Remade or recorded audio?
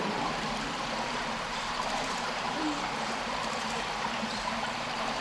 remade